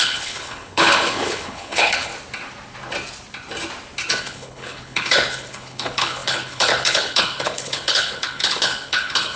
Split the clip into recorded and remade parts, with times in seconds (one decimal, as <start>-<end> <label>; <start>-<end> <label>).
0.0-2.1 remade; 2.1-4.2 recorded; 4.2-9.4 remade